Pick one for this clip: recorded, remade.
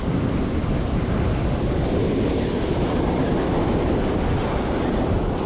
recorded